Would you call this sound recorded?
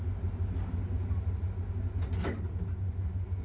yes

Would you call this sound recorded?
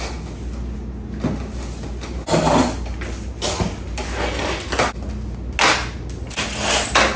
yes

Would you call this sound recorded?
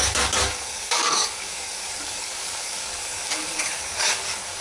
no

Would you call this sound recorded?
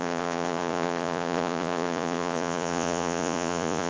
no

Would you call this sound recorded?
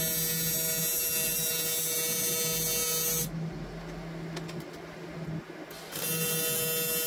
yes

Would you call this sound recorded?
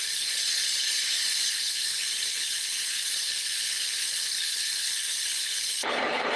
no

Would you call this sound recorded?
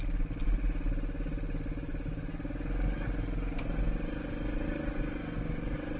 yes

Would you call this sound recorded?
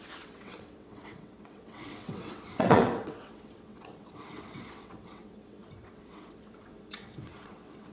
no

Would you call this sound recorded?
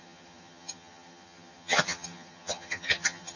no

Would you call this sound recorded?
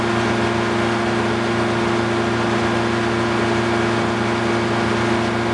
yes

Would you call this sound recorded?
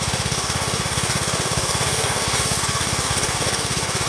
no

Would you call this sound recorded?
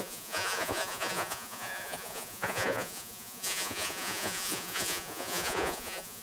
no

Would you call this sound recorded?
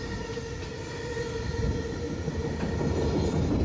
yes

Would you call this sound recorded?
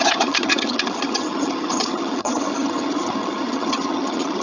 no